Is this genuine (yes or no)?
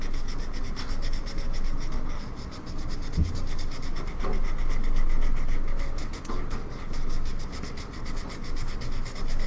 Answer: yes